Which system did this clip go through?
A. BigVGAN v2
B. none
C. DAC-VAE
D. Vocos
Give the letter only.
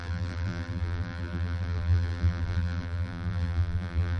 A